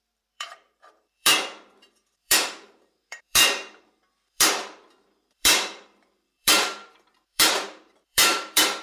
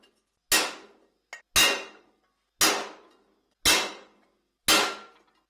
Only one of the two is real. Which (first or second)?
second